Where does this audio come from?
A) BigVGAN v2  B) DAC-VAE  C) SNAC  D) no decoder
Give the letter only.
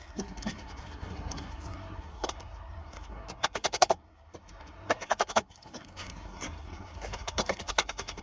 C